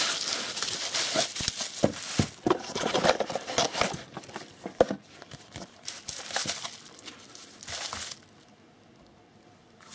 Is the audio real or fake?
real